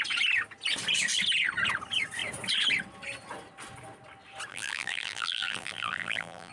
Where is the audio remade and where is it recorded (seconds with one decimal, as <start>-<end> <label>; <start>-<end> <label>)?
0.0-4.5 recorded; 4.5-6.5 remade